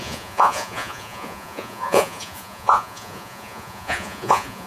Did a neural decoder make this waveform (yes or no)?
yes